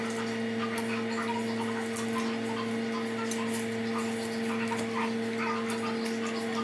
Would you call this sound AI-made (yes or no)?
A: no